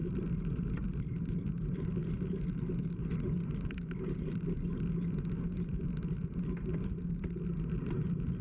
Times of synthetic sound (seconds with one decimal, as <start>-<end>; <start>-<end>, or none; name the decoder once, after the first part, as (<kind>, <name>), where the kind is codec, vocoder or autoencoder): none